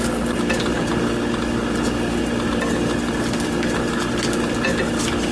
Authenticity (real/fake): real